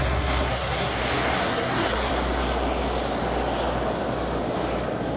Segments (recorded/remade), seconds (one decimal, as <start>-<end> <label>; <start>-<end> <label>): 0.0-1.0 remade; 1.0-1.5 recorded; 1.5-2.1 remade; 2.1-5.2 recorded